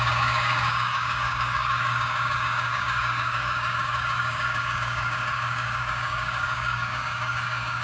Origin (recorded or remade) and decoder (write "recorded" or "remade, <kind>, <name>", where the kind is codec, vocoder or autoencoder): remade, codec, DAC